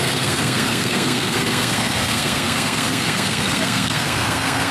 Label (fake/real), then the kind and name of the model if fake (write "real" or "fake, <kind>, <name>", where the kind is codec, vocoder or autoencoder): fake, codec, SNAC